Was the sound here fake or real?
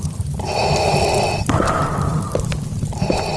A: real